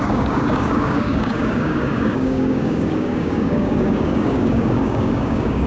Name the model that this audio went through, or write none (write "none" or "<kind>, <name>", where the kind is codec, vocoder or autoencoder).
codec, DAC